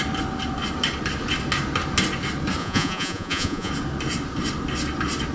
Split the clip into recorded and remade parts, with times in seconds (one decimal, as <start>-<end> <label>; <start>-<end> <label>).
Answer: 0.0-2.6 recorded; 2.6-3.7 remade; 3.7-5.3 recorded